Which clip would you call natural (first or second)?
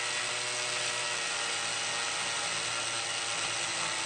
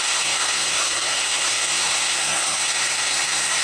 first